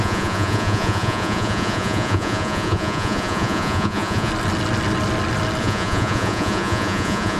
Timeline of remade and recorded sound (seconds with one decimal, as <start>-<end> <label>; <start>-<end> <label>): 0.0-4.3 remade; 4.3-5.6 recorded; 5.6-7.4 remade